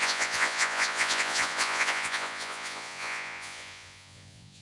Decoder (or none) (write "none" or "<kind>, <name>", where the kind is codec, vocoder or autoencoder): vocoder, Vocos